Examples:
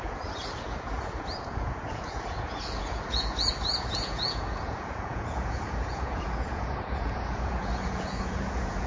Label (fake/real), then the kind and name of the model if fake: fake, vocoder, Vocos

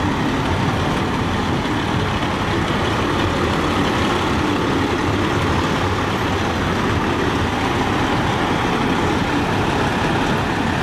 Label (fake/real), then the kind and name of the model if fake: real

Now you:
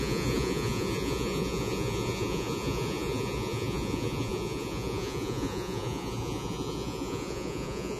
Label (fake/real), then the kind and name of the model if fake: fake, vocoder, Vocos